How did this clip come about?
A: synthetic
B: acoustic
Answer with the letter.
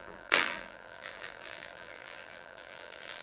A